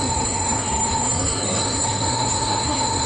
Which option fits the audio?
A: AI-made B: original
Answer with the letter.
A